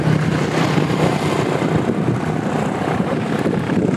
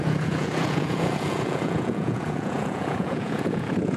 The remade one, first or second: second